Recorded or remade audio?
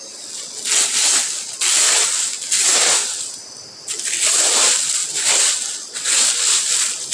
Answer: recorded